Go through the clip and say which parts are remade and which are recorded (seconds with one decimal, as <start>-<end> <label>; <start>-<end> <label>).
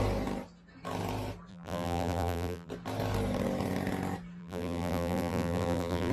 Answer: 0.0-1.5 recorded; 1.5-2.7 remade; 2.7-4.4 recorded; 4.4-6.1 remade